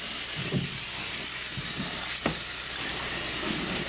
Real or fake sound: real